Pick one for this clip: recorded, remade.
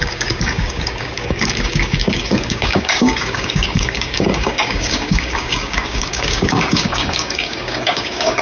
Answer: remade